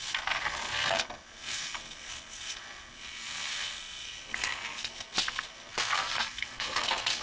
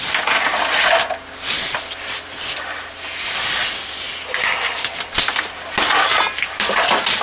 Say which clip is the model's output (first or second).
first